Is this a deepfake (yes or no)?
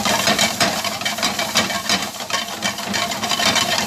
yes